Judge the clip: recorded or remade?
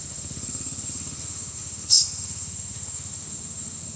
remade